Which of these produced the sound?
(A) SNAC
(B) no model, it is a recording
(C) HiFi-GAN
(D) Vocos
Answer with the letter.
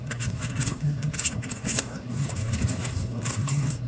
A